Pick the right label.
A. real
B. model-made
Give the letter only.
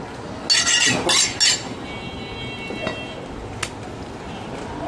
A